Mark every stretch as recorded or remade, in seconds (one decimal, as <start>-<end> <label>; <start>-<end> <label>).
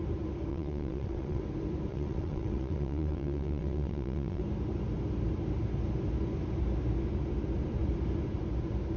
0.0-0.5 recorded; 0.5-1.4 remade; 1.4-1.9 recorded; 1.9-4.4 remade; 4.4-9.0 recorded